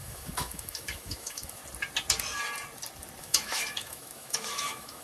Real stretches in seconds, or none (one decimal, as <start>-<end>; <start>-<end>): 1.6-3.2